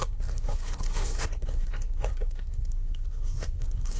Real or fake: fake